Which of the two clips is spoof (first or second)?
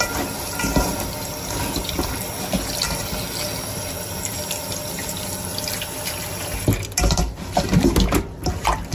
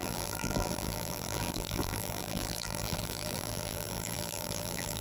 second